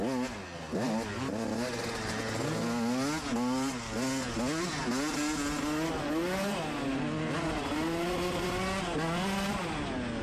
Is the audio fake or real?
real